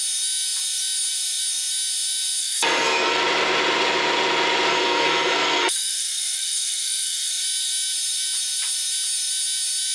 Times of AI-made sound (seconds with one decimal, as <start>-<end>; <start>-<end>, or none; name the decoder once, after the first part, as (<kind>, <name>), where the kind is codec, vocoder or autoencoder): 2.4-3.2 (codec, SNAC); 4.7-7.3